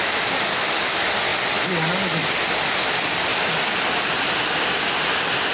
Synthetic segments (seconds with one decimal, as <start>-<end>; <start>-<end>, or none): none